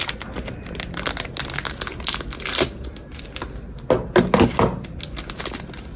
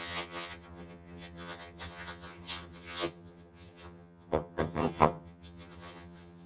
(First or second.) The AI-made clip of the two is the second